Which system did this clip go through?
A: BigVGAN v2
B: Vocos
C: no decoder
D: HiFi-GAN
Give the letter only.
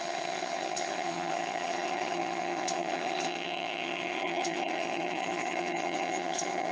D